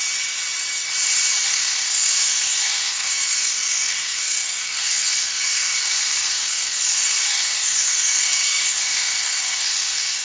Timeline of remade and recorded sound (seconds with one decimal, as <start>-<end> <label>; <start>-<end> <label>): 0.0-1.5 recorded; 1.5-10.2 remade